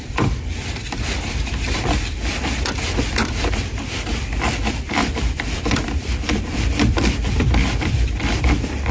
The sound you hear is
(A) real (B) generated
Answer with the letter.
B